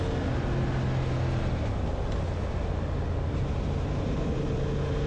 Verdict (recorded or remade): recorded